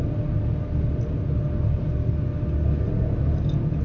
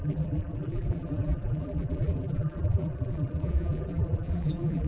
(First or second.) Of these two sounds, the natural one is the first